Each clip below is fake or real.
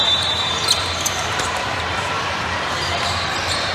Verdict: fake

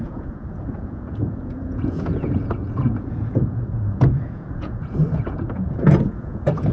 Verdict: fake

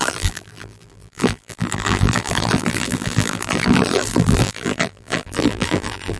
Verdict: fake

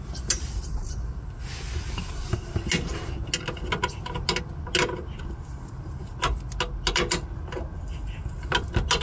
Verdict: real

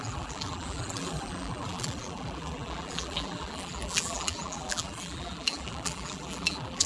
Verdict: fake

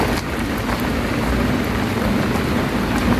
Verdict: real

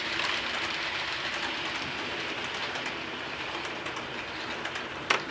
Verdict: fake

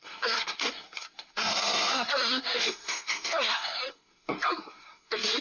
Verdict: fake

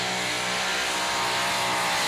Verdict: real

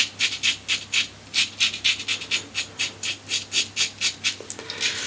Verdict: real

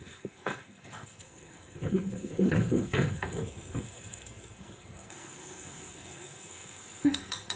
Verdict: fake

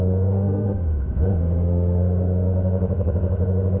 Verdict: fake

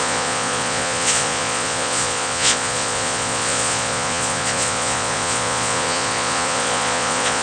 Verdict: fake